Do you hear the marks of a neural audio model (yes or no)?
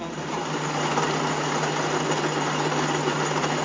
no